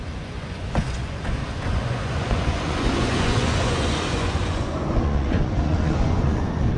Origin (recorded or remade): remade